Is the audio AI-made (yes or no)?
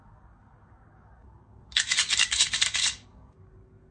yes